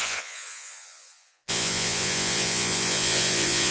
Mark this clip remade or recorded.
remade